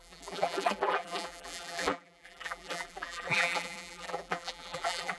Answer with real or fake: fake